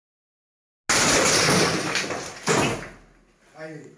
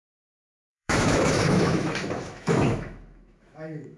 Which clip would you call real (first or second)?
first